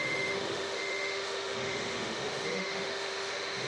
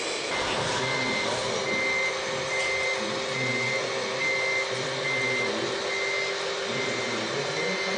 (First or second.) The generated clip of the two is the first